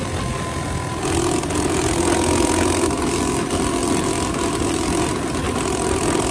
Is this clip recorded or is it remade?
recorded